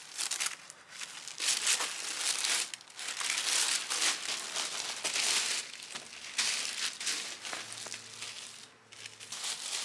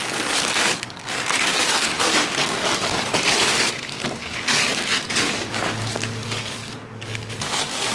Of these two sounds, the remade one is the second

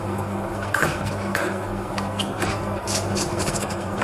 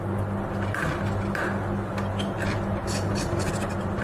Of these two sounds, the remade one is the first